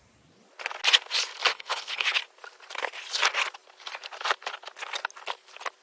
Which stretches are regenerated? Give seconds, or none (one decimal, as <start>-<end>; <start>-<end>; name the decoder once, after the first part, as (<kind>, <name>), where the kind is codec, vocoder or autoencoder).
1.5-2.2 (codec, HILCodec)